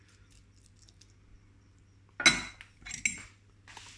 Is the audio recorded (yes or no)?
yes